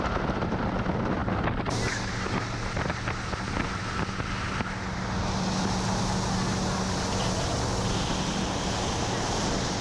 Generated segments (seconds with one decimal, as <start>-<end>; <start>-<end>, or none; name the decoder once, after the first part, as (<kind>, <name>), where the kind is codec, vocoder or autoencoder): none